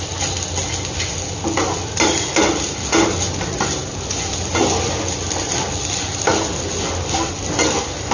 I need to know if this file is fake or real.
real